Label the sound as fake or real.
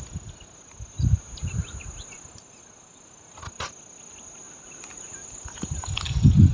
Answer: real